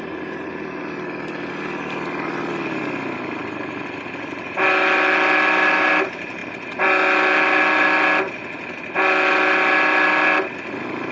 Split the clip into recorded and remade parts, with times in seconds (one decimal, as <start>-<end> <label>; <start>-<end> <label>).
0.0-11.1 recorded